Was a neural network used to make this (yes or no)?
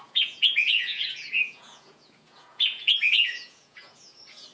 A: yes